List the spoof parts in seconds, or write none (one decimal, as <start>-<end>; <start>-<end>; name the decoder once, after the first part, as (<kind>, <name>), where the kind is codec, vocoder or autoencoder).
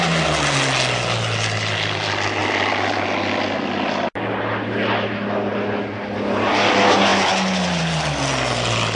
none